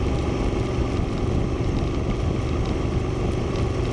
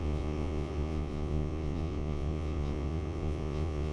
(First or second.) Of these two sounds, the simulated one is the second